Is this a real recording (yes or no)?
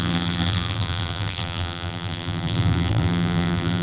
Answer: no